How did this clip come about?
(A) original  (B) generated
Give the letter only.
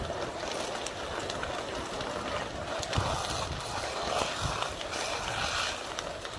A